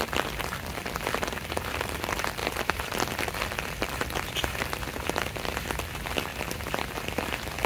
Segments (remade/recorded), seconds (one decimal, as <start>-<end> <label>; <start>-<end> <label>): 0.0-2.4 recorded; 2.4-4.3 remade; 4.3-7.7 recorded